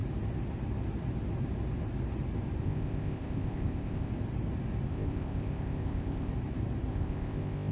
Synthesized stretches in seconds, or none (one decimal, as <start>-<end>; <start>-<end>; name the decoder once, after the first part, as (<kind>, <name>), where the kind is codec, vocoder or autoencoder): 2.6-4.1 (codec, ZipCodec); 4.9-6.3; 6.9-7.7